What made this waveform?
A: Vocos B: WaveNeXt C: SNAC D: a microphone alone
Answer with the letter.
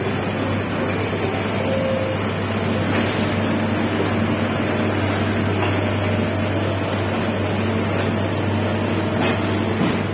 D